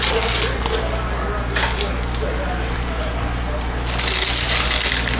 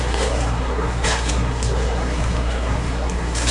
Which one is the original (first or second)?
first